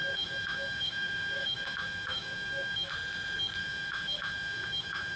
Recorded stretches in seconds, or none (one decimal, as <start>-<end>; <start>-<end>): 2.9-3.6